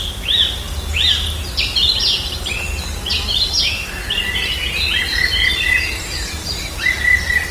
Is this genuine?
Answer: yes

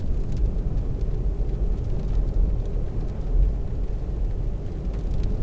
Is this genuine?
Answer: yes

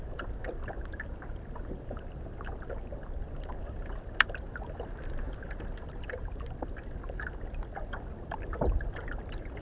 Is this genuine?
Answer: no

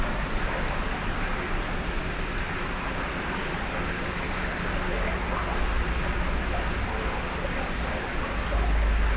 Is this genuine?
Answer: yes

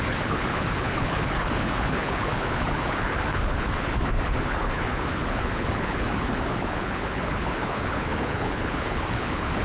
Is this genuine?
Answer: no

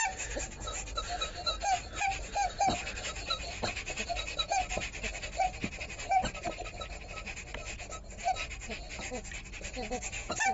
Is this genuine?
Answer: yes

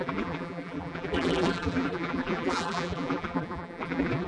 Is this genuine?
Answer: no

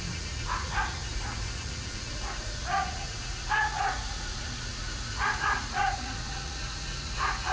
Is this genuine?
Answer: no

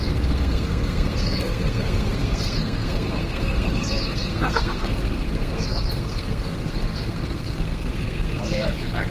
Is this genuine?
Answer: no